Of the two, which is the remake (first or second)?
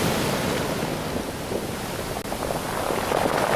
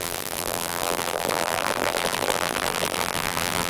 second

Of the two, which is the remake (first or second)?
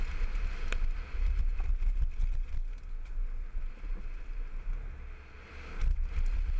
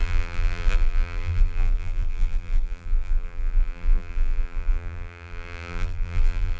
second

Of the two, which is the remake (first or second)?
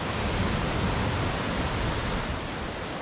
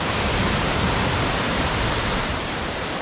second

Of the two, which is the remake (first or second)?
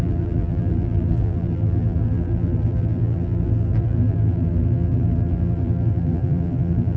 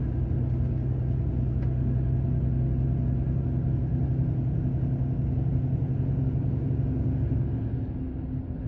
first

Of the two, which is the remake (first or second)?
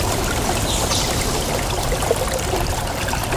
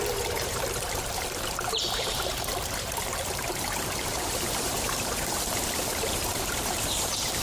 second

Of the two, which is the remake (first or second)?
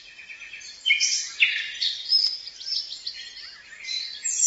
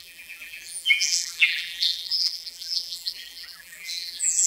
second